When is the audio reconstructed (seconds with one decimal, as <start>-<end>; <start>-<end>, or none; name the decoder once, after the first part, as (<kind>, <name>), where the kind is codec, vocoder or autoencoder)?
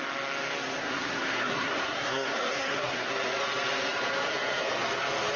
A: 0.8-3.1 (codec, SNAC)